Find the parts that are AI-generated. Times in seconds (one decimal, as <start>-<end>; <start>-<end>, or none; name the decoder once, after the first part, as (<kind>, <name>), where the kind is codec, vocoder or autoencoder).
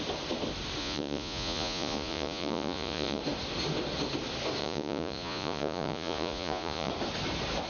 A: 0.8-3.2 (vocoder, Vocos); 4.6-6.9